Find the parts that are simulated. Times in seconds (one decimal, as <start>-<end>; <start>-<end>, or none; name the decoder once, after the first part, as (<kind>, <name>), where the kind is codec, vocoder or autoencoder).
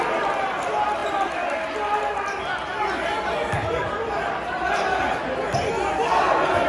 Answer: 3.6-4.9 (vocoder, BigVGAN v2)